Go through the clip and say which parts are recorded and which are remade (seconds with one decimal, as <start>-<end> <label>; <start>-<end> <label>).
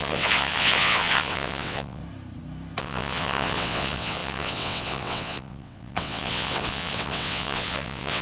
0.0-2.0 remade; 2.0-2.8 recorded; 2.8-8.2 remade